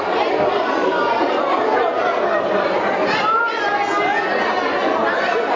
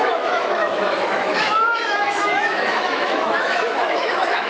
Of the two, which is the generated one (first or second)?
second